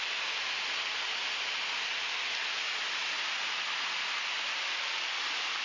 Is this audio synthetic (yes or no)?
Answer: no